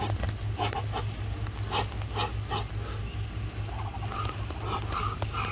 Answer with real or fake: real